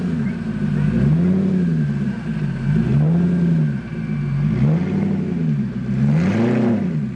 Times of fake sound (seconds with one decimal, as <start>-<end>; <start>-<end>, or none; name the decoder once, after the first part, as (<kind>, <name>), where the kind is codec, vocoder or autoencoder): none

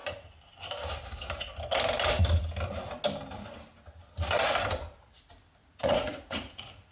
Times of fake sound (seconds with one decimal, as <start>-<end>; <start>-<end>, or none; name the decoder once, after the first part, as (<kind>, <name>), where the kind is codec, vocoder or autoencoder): 5.6-6.9 (vocoder, Vocos)

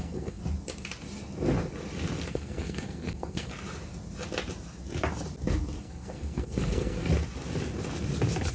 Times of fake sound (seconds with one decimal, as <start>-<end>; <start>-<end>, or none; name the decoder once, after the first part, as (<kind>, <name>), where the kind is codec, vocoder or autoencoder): 0.0-0.4 (codec, SNAC); 2.3-3.5; 5.8-7.1

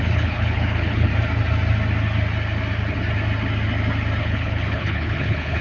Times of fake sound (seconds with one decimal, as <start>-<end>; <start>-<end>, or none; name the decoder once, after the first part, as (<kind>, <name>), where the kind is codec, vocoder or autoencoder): 0.0-1.1 (codec, HILCodec); 4.2-5.6

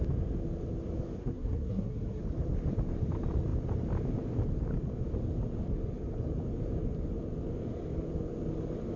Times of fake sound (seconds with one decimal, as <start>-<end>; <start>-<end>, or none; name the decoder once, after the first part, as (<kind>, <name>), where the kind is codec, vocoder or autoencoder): 1.2-2.2 (codec, SNAC)

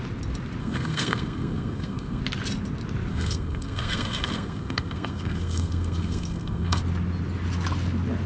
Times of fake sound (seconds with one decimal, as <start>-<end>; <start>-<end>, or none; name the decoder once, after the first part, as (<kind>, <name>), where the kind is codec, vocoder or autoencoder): 0.6-2.2 (codec, SNAC); 3.1-6.8

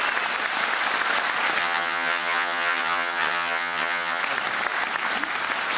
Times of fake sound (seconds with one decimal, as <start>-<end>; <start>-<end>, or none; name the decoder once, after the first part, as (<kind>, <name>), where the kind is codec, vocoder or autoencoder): 1.6-4.2 (vocoder, HiFi-GAN)

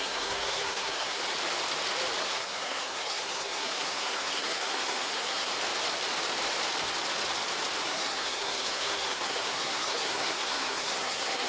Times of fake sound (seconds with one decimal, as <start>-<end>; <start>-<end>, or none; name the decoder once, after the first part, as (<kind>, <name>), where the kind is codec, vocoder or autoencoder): 0.0-1.2 (codec, SNAC); 2.2-5.5; 7.8-11.5